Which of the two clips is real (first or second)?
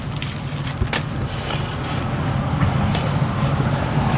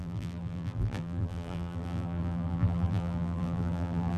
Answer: first